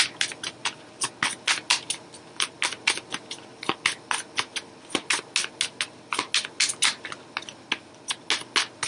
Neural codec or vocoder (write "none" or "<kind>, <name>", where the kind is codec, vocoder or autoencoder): none